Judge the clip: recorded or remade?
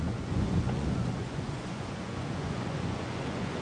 remade